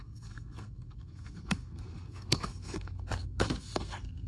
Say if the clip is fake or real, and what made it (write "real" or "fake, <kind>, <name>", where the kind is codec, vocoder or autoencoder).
fake, codec, SNAC